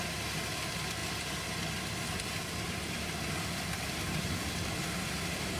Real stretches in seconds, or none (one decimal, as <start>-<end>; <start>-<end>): 0.0-5.6